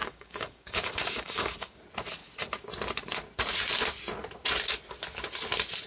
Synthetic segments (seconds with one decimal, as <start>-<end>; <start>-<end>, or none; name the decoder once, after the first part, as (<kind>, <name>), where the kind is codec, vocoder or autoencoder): 0.0-1.8 (codec, DAC)